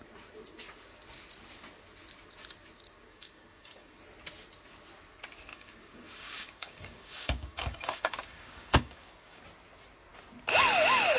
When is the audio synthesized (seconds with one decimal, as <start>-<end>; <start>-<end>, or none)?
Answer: 3.1-4.0; 5.5-9.4